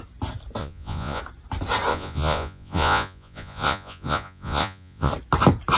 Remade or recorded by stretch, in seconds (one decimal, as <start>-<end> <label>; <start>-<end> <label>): 0.0-0.6 recorded; 0.6-1.2 remade; 1.2-1.9 recorded; 1.9-5.1 remade; 5.1-5.8 recorded